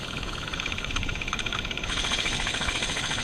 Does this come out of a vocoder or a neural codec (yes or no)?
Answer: yes